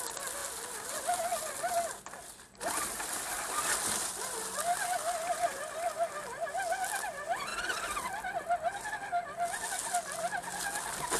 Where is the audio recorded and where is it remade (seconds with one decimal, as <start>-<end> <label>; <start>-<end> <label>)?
0.0-11.2 recorded